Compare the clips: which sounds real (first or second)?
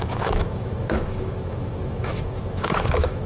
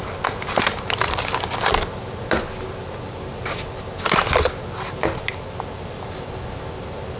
second